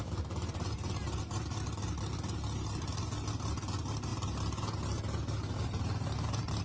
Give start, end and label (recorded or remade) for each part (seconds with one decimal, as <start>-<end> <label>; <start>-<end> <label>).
0.0-6.6 recorded